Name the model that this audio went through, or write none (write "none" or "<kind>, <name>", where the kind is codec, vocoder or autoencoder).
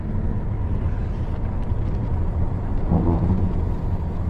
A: none